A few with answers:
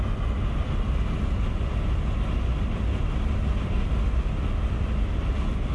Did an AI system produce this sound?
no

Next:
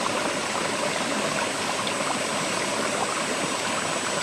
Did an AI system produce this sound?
no